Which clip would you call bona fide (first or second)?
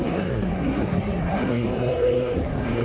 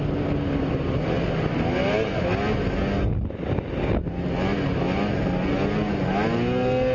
second